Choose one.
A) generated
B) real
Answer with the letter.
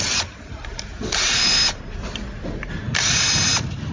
A